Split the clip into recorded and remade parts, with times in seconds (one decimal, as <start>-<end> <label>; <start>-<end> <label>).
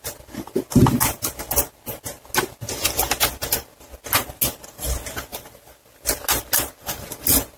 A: 0.0-7.6 recorded